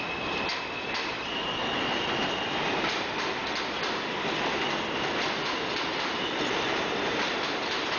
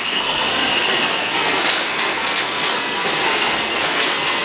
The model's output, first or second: second